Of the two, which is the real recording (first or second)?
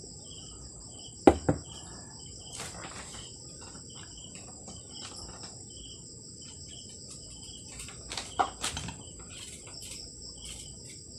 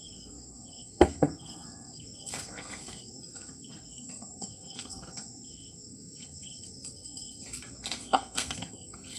first